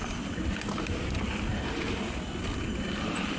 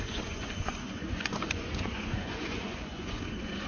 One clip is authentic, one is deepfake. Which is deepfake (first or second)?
second